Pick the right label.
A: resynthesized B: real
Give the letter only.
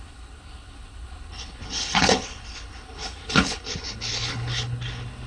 A